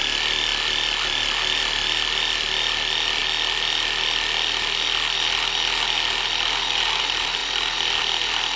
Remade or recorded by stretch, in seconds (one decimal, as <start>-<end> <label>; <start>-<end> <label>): 0.0-8.6 recorded